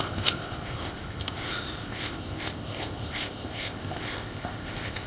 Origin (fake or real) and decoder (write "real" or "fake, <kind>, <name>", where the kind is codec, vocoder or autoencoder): fake, codec, ZipCodec